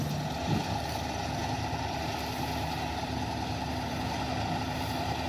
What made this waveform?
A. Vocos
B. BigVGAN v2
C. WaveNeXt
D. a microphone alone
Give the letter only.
D